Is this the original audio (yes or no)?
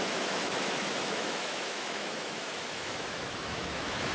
no